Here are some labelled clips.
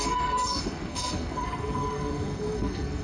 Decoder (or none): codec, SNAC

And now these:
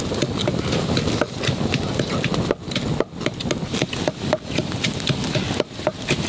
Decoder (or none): none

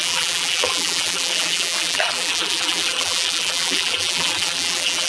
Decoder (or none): vocoder, BigVGAN v2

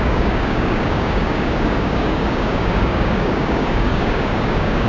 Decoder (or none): codec, DAC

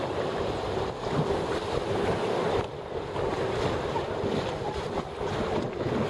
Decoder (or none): none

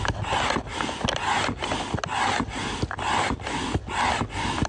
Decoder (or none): none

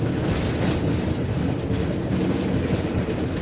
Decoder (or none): none